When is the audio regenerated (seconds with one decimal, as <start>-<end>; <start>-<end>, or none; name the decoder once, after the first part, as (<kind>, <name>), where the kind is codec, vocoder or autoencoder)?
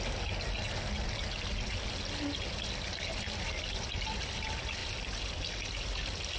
4.8-5.7 (vocoder, BigVGAN v2)